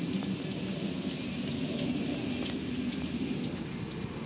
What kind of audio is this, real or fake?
real